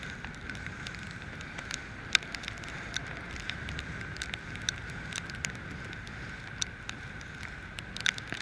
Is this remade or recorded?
recorded